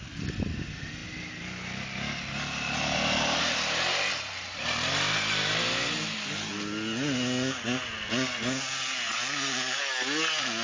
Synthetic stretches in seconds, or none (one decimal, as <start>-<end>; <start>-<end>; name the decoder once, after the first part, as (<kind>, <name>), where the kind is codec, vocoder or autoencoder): none